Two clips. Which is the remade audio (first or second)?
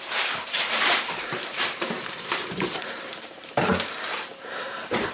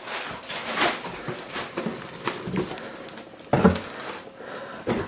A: first